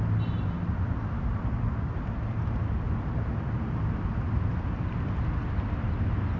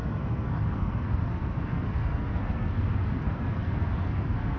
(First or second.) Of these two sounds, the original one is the first